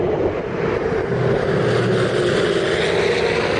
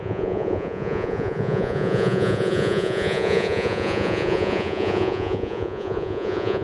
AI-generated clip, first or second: second